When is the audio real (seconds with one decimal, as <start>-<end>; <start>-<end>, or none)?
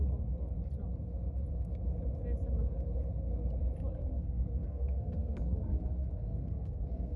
0.0-3.9